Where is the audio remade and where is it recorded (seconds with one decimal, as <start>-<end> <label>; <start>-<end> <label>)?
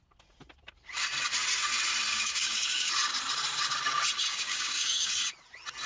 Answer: 0.0-2.1 recorded; 2.1-2.9 remade; 2.9-4.3 recorded; 4.3-5.1 remade; 5.1-5.9 recorded